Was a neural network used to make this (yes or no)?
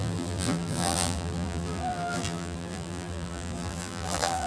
yes